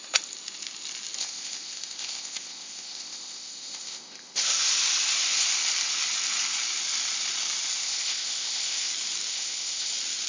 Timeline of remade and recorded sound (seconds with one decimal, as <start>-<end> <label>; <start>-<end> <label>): 0.0-1.2 recorded; 1.2-4.6 remade; 4.6-7.8 recorded; 7.8-8.9 remade; 8.9-9.3 recorded; 9.3-9.9 remade; 9.9-10.3 recorded